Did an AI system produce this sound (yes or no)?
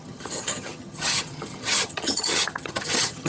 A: yes